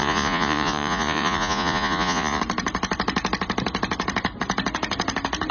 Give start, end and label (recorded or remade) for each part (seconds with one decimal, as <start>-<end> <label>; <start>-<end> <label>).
0.0-2.4 remade; 2.4-5.5 recorded